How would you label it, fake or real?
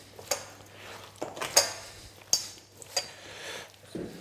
real